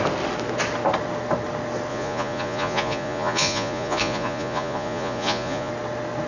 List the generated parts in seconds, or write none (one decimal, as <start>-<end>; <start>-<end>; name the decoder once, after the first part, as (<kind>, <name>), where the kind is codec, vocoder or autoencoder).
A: 1.9-5.7 (vocoder, Vocos)